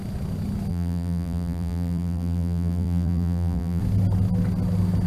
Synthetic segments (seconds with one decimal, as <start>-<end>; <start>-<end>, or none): 0.7-3.8